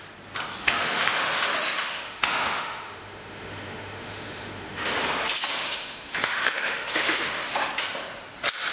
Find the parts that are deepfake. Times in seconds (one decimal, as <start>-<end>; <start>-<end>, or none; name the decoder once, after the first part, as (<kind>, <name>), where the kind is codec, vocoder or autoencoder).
0.6-4.9 (autoencoder, DAC-VAE); 5.6-7.7

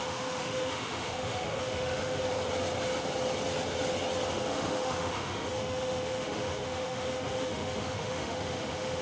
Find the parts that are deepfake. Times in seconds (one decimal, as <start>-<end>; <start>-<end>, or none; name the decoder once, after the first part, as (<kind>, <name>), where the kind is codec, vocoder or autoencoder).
0.0-2.3 (autoencoder, DAC-VAE); 4.3-9.0